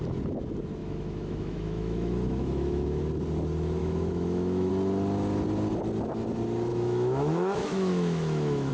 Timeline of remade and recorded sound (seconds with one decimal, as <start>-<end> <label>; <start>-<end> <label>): 0.0-0.8 recorded; 0.8-3.0 remade; 3.0-3.8 recorded; 3.8-4.7 remade; 4.7-6.7 recorded; 6.7-8.7 remade